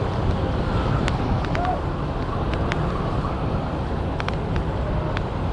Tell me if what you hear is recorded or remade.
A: recorded